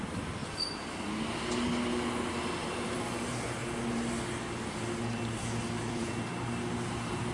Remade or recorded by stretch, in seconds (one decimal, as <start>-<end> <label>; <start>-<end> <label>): 0.0-0.4 remade; 0.4-2.6 recorded; 2.6-3.6 remade; 3.6-5.9 recorded; 5.9-7.3 remade